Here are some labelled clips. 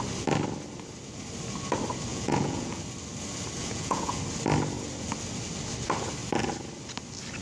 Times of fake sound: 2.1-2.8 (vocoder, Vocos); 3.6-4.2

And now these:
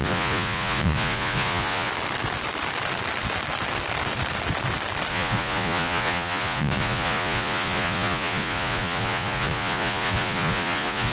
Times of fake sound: 0.0-1.9 (vocoder, Vocos); 5.1-11.1

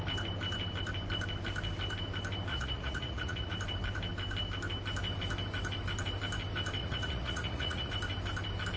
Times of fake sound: 2.5-3.5 (vocoder, Vocos); 6.8-7.9

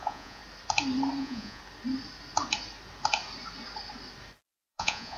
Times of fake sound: 0.0-0.4 (vocoder, Vocos); 1.2-1.6; 4.7-5.2

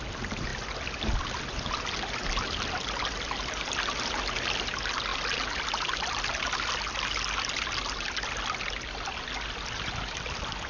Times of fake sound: none

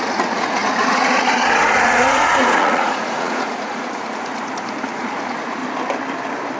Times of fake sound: 0.0-5.6 (vocoder, Vocos)

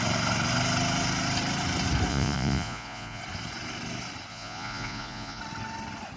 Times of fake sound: 2.1-3.2 (vocoder, Vocos); 4.3-5.4

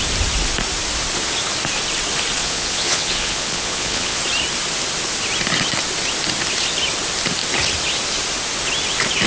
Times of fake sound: 2.4-4.2 (vocoder, Vocos)